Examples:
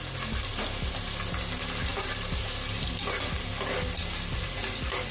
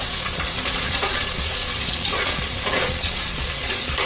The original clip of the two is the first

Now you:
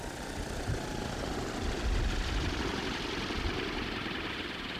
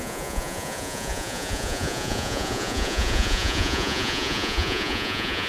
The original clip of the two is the first